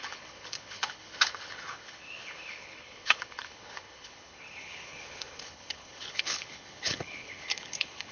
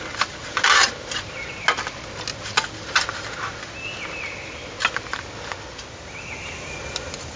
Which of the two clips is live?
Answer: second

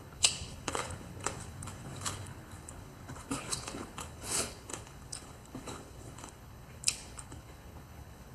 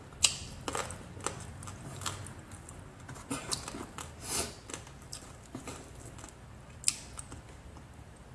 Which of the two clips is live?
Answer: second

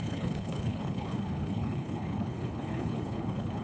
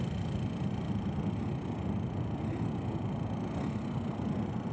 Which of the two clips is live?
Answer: second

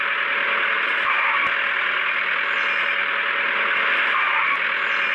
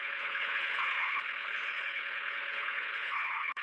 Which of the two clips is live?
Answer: first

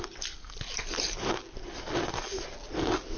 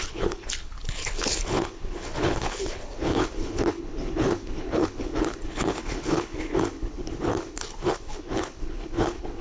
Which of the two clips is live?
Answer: first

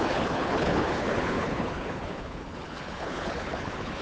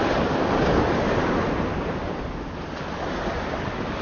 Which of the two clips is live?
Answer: second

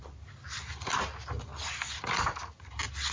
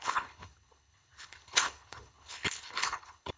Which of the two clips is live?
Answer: first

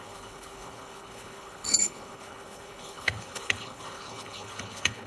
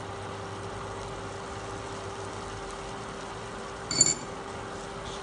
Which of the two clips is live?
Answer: second